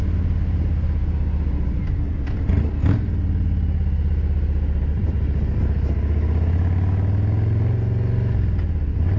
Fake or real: real